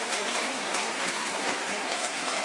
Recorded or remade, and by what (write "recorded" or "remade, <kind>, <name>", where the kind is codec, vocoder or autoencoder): remade, codec, SNAC